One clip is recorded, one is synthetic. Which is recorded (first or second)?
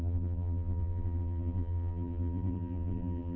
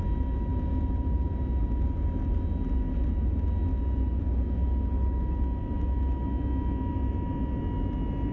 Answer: second